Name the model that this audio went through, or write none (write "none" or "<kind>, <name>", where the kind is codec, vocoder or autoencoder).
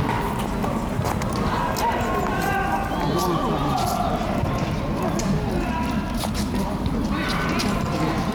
none